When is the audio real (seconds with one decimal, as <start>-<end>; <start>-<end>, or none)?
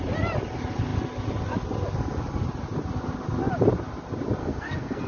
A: 0.0-4.4